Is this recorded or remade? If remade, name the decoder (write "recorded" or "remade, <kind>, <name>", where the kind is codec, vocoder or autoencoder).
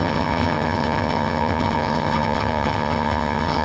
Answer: remade, vocoder, HiFi-GAN